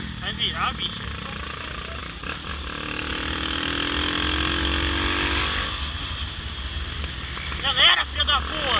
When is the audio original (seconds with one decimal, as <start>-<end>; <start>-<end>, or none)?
0.0-2.0; 2.5-3.1; 8.2-8.8